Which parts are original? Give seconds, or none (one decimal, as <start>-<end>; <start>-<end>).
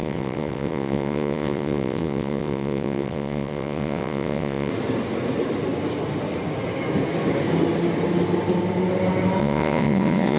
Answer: 4.7-9.4